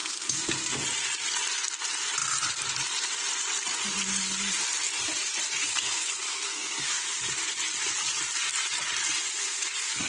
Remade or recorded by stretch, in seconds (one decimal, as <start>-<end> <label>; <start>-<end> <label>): 0.0-0.8 remade; 0.8-5.6 recorded; 5.6-7.2 remade; 7.2-9.4 recorded; 9.4-10.1 remade